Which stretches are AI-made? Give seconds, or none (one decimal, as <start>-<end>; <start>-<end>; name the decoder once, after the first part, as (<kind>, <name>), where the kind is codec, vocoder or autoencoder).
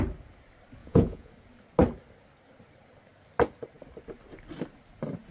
0.8-1.3 (vocoder, Vocos)